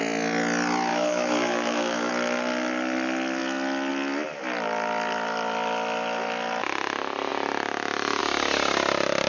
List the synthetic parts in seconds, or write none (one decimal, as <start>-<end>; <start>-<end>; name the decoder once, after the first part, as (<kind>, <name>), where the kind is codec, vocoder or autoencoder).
0.9-2.1 (autoencoder, DAC-VAE)